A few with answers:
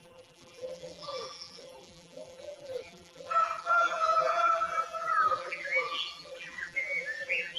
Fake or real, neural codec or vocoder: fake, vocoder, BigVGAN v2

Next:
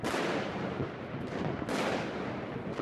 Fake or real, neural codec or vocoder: real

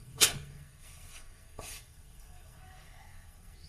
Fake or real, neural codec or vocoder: fake, codec, SNAC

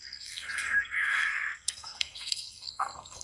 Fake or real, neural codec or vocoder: fake, codec, SNAC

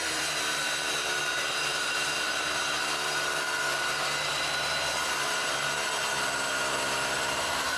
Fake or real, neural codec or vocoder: fake, vocoder, BigVGAN v2